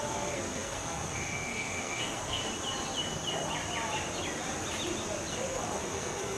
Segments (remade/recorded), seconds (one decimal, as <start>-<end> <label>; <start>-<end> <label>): 0.0-2.4 remade; 2.4-5.3 recorded; 5.3-6.4 remade